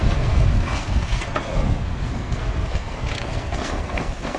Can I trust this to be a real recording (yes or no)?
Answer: no